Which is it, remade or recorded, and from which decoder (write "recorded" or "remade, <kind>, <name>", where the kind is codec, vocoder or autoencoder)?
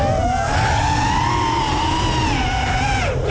recorded